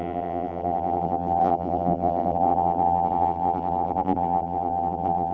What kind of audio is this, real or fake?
fake